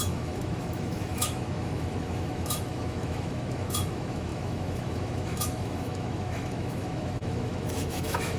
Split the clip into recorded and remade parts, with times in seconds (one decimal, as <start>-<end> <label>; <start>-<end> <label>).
0.0-8.4 remade